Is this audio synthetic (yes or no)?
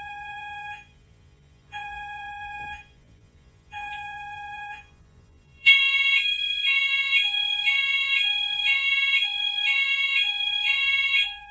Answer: yes